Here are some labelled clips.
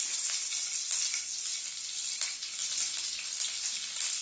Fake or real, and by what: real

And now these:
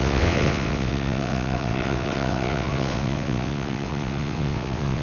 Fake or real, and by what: fake, vocoder, WaveNeXt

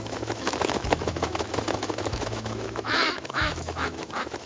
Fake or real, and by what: fake, autoencoder, DAC-VAE